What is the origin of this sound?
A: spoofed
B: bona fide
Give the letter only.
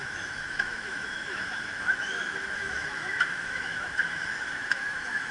A